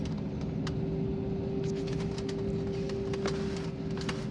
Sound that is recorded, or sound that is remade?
recorded